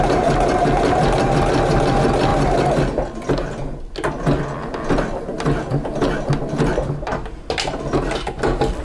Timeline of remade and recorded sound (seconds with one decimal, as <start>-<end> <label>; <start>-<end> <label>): 0.0-8.8 recorded